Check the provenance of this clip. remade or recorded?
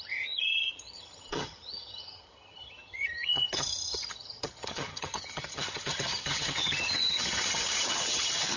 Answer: remade